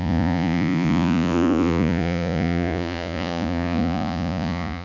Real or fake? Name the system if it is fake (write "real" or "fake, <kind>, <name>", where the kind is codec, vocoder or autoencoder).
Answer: fake, vocoder, Vocos